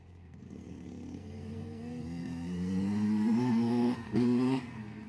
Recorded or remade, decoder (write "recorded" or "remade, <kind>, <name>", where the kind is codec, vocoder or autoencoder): remade, codec, SNAC